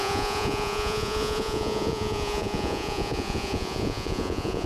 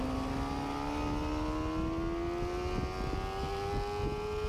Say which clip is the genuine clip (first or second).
second